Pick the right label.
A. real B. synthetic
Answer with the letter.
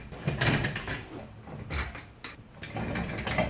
A